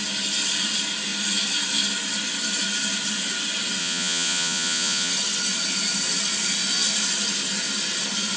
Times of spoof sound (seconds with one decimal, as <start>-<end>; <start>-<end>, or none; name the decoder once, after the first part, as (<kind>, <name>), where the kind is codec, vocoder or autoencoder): 3.8-5.1 (vocoder, Vocos)